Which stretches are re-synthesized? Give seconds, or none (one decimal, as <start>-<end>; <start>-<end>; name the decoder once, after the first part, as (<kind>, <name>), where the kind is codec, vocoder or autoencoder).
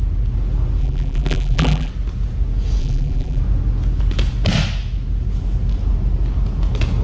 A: 0.8-1.9 (vocoder, BigVGAN v2); 2.8-3.4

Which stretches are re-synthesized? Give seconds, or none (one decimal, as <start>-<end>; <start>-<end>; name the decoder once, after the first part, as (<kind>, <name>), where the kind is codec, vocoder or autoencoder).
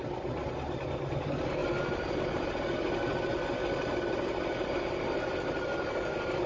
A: none